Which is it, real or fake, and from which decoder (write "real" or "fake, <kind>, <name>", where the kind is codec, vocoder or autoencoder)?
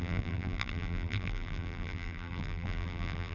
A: fake, vocoder, BigVGAN v2